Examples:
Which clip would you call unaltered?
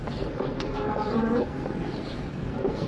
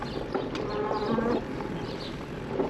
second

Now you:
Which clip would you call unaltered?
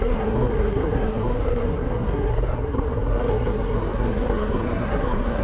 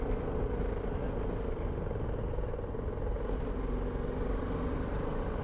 second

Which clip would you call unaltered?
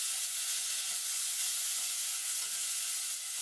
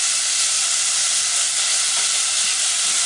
second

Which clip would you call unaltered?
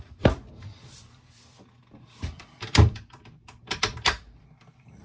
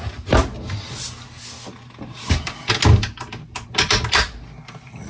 second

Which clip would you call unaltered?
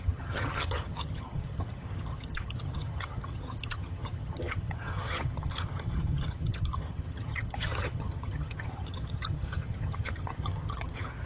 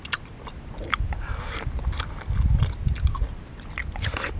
second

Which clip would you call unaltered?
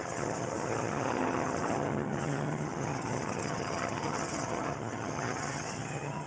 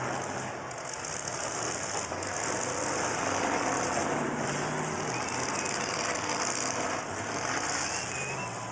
second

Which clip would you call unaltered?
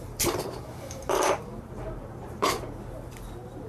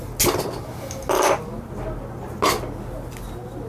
second